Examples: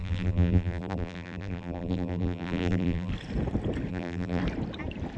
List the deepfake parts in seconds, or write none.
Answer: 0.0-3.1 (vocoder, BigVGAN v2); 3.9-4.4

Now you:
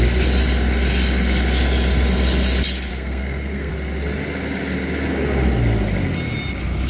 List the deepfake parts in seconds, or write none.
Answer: 2.9-3.7 (codec, SNAC)

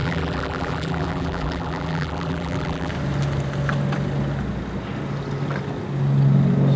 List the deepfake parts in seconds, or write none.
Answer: 0.0-2.9 (vocoder, BigVGAN v2)